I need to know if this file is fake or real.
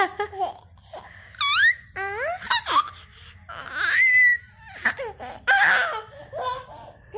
real